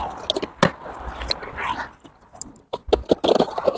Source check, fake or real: real